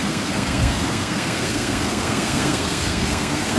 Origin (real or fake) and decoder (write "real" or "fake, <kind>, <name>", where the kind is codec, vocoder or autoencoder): fake, codec, SNAC